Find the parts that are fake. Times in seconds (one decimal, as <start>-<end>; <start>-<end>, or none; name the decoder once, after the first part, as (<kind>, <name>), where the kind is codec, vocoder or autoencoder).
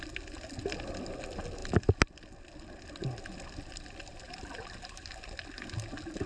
none